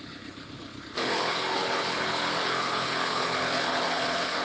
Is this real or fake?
fake